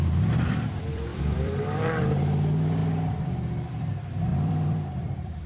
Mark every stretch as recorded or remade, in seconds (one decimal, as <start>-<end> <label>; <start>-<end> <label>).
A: 0.0-2.8 remade; 2.8-3.7 recorded; 3.7-5.5 remade